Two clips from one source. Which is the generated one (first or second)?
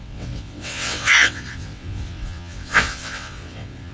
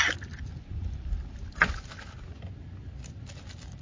first